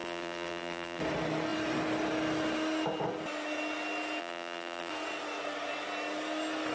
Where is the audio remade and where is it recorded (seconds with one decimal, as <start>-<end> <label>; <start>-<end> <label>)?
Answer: 0.0-1.0 remade; 1.0-4.2 recorded; 4.2-4.9 remade; 4.9-6.7 recorded